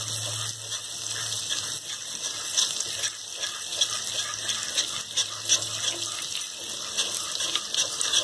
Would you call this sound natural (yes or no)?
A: yes